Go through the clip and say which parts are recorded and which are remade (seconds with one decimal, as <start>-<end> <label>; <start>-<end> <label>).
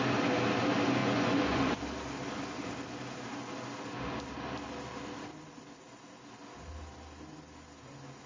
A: 0.0-1.0 recorded; 1.0-1.8 remade; 1.8-8.3 recorded